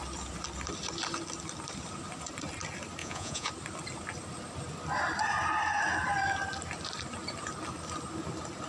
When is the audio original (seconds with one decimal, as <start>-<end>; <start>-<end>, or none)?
0.0-3.0; 3.5-8.7